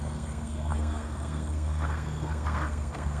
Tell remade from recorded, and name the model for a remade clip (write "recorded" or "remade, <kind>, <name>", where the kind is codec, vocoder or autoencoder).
remade, codec, SNAC